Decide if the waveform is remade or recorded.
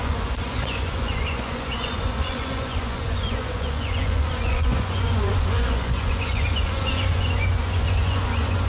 remade